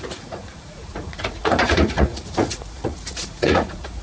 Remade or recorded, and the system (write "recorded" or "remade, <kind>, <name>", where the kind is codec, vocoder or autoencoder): remade, vocoder, Vocos